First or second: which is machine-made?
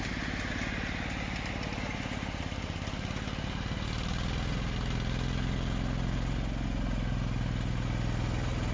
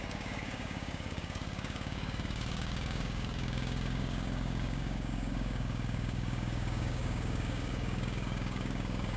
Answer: second